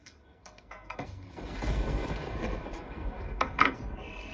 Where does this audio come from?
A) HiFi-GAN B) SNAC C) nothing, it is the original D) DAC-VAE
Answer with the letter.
B